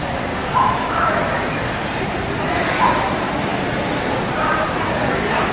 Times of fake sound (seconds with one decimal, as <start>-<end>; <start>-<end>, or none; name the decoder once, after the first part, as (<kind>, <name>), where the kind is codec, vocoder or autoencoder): 0.4-1.3 (autoencoder, DAC-VAE)